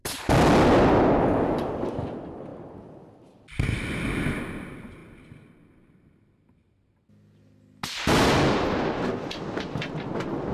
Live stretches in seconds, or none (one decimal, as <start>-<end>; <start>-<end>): 0.0-10.5